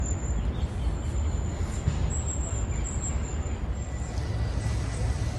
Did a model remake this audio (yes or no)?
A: no